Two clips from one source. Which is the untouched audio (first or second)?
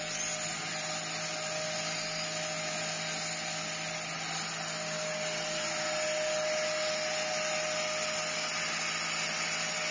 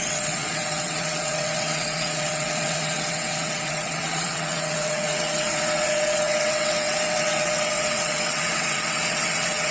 first